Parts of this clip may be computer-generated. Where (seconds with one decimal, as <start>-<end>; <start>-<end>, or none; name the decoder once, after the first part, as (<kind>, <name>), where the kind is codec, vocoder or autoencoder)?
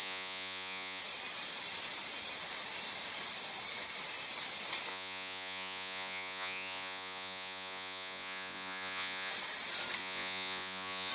0.0-1.0 (vocoder, Vocos); 4.9-9.3; 10.0-11.1